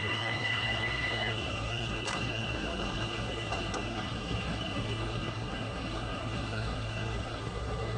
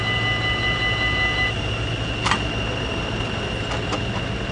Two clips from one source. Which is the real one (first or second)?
second